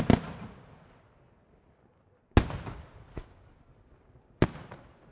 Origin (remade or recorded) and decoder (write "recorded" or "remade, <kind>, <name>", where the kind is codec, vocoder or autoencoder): recorded